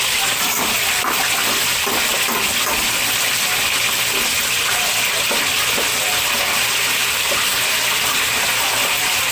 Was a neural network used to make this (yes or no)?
no